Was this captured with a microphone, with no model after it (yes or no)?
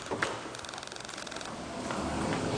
yes